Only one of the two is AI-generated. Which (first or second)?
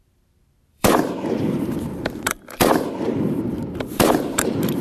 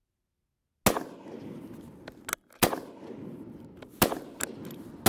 first